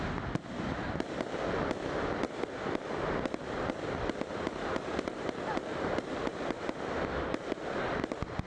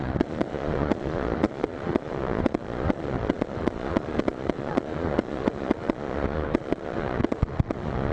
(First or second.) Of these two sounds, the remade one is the second